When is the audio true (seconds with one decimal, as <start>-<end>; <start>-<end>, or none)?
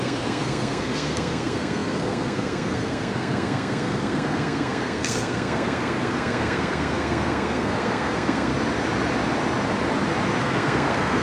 8.5-10.4